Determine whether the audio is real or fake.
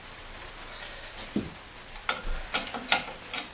real